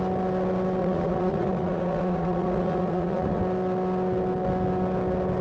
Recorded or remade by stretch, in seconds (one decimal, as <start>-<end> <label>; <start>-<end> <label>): 0.0-0.8 recorded; 0.8-3.4 remade; 3.4-5.4 recorded